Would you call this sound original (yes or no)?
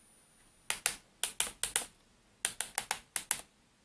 yes